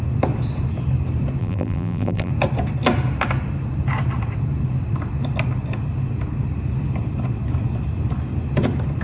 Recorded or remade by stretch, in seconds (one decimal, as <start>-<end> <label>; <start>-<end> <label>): 0.0-1.4 recorded; 1.4-2.3 remade; 2.3-9.0 recorded